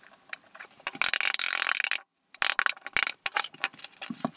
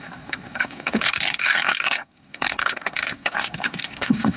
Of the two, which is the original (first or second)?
first